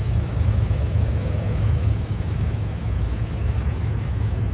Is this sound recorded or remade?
remade